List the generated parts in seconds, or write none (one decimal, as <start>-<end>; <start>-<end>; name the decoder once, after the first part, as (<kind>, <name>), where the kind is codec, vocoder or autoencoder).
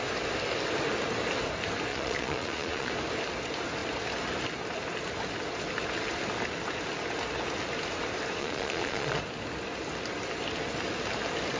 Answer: 1.9-2.9 (vocoder, Vocos); 8.4-9.2